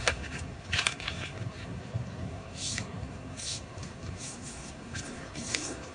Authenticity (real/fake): fake